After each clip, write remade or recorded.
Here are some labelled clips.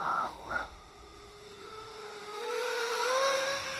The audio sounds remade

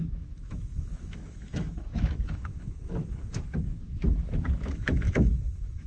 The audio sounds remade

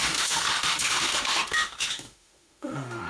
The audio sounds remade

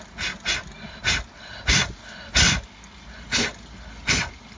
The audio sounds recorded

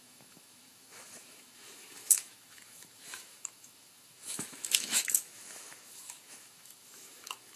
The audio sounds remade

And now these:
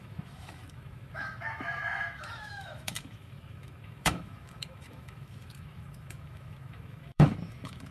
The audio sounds remade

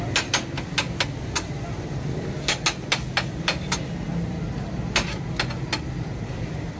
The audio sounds recorded